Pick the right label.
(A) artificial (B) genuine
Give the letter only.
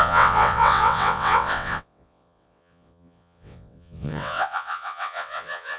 A